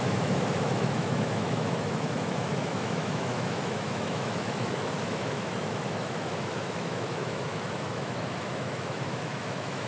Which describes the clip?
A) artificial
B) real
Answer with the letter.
A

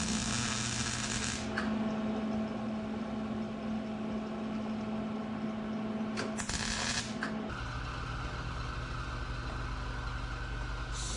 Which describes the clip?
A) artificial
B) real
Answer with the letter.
B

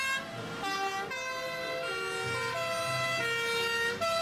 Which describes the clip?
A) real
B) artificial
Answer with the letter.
A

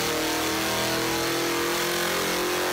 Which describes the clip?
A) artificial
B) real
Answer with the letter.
B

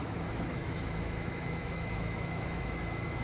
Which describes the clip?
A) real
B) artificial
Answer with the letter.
B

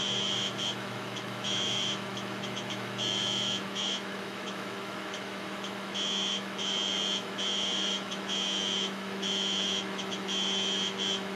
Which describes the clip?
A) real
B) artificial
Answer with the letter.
B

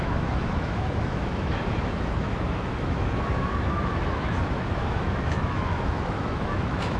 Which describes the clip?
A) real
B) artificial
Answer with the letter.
B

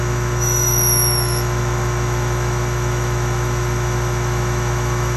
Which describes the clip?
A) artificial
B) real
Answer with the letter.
A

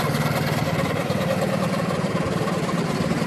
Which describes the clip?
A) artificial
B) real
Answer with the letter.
B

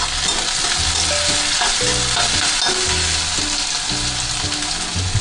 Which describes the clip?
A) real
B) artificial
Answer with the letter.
A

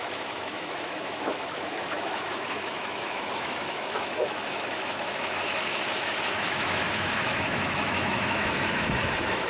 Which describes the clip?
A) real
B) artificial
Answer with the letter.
B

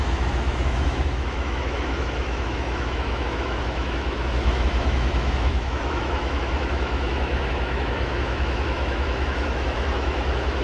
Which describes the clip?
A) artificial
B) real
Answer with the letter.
A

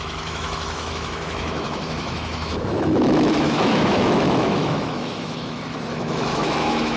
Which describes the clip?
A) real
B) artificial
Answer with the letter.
B